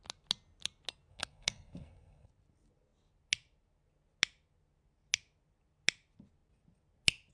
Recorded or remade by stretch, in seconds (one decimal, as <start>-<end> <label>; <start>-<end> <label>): 0.0-1.1 recorded; 1.1-2.3 remade; 2.3-7.3 recorded